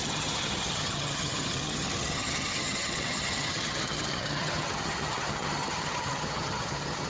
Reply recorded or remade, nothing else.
remade